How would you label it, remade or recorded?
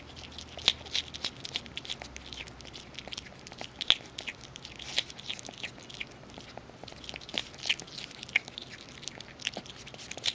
recorded